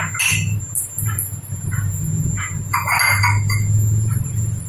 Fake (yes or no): no